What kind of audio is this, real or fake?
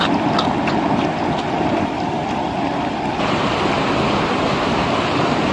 real